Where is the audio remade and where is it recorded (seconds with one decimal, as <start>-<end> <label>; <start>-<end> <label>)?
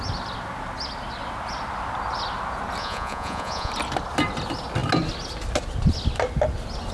0.0-2.8 recorded; 2.8-3.7 remade; 3.7-6.9 recorded